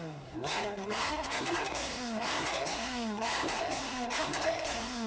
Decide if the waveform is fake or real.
fake